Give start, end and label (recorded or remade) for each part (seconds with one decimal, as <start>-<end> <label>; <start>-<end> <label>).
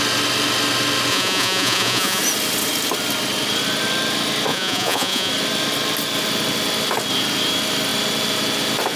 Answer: 0.0-1.1 recorded; 1.1-2.2 remade; 2.2-4.5 recorded; 4.5-5.3 remade; 5.3-9.0 recorded